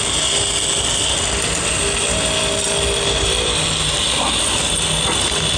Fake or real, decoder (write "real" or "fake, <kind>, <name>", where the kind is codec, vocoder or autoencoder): real